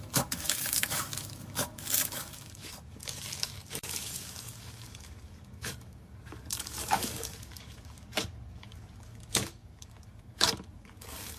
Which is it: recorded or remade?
remade